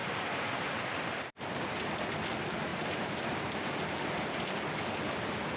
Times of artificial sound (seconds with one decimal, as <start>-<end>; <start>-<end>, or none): 0.0-0.5; 2.7-3.7